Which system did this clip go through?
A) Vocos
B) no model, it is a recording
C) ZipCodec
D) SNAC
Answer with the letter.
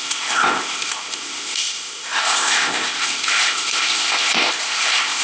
C